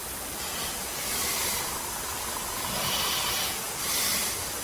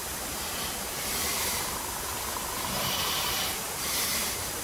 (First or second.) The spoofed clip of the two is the second